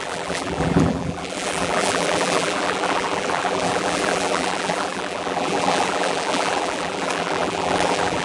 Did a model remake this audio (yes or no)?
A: yes